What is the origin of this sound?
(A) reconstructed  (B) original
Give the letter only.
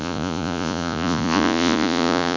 A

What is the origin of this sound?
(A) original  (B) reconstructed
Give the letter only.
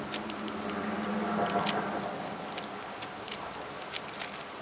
A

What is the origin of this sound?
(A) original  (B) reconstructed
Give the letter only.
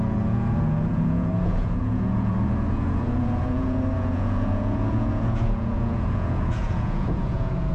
B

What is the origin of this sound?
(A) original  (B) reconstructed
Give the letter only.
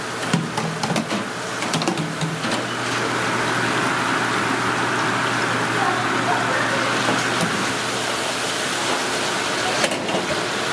A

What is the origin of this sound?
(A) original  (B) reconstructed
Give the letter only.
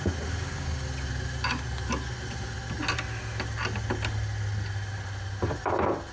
A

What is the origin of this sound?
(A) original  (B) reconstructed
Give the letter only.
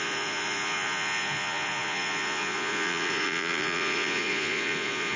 B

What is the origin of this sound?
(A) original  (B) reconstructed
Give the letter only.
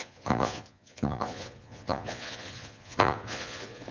B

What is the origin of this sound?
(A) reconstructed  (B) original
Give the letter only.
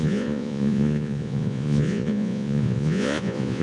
A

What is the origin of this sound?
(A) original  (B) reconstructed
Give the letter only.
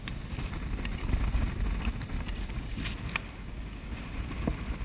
A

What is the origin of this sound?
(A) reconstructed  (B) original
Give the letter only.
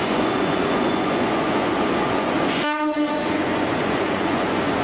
A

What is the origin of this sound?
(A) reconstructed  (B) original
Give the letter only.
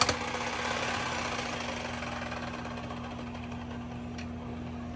B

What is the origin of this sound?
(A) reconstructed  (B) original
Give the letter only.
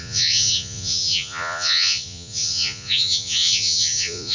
A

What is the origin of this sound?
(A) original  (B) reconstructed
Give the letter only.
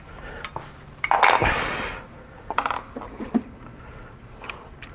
A